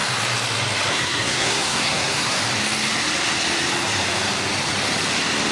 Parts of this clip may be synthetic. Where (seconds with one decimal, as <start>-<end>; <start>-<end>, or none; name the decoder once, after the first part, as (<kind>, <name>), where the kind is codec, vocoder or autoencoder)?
0.9-2.4 (codec, SNAC)